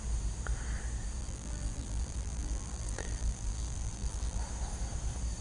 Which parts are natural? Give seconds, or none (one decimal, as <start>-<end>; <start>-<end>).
0.0-1.2; 4.4-5.4